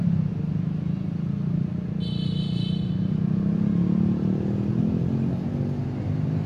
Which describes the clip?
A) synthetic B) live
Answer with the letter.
B